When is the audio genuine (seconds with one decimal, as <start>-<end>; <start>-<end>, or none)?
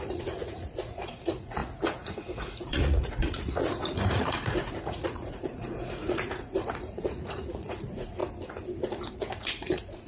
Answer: 8.2-9.1